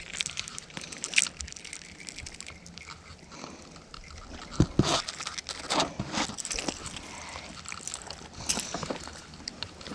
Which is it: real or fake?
real